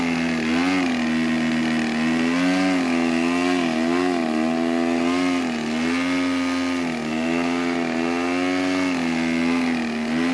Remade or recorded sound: recorded